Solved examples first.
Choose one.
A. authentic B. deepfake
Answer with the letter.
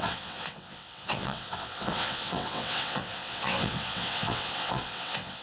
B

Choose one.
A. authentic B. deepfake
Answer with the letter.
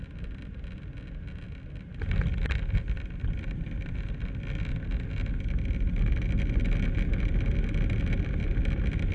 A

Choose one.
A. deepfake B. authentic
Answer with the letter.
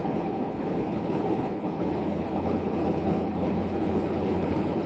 A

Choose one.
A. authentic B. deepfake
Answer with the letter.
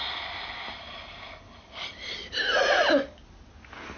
A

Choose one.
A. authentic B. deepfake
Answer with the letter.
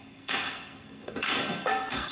B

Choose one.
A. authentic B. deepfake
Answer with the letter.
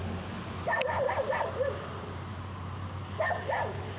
A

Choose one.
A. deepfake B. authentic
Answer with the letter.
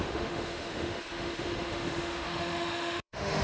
A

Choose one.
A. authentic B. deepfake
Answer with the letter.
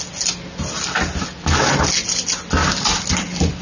A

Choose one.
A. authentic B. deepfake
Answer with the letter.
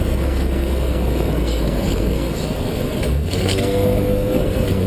B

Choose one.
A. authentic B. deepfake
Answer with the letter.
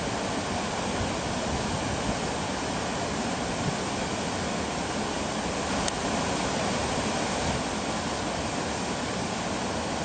A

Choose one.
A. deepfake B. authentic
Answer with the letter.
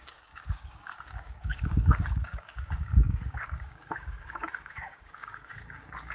A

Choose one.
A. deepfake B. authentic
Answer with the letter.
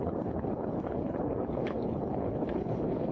A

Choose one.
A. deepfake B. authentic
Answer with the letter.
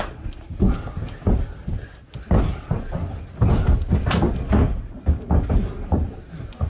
B